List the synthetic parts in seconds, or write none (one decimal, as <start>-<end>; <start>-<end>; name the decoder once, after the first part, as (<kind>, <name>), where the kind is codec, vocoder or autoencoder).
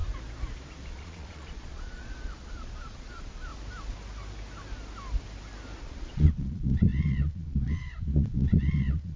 0.9-3.5 (vocoder, Vocos); 5.8-9.2